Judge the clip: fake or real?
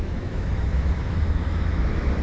fake